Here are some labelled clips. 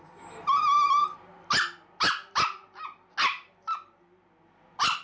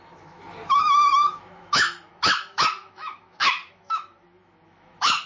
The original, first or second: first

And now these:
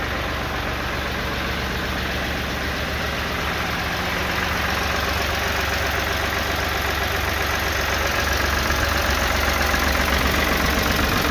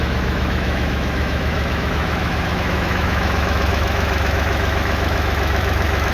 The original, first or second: first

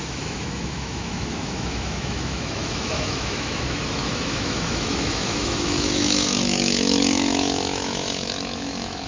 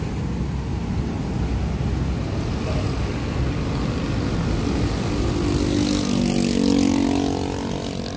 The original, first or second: second